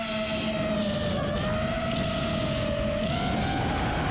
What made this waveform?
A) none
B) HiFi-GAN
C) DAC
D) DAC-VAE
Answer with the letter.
A